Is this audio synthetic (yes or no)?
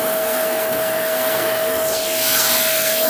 yes